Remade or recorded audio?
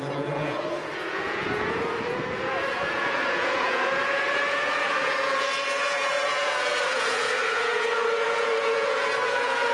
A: remade